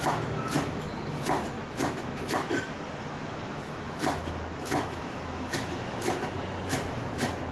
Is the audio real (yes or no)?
no